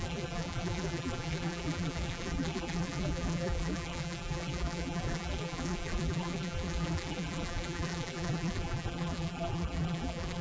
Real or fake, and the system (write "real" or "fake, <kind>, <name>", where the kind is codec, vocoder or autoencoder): fake, vocoder, BigVGAN v2